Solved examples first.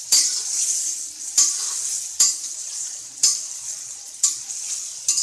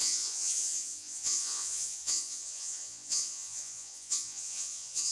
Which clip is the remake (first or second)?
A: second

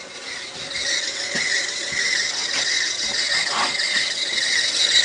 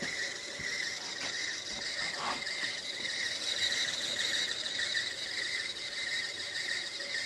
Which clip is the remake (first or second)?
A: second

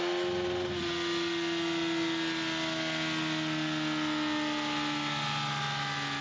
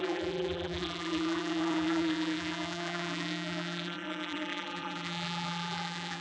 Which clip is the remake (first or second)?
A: second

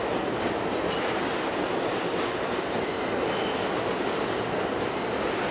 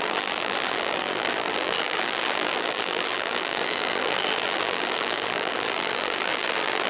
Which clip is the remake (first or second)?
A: second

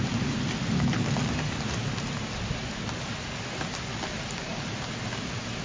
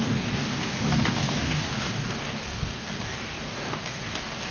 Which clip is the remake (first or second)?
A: second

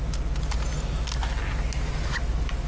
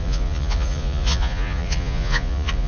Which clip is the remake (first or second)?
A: second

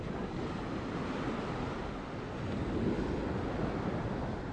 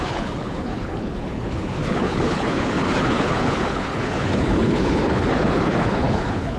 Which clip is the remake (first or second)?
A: second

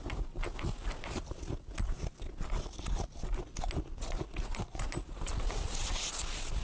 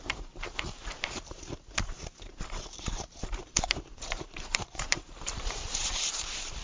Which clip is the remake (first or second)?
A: second